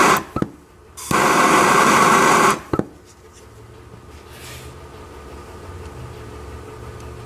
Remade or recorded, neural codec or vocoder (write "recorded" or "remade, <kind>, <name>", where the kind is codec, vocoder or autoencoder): recorded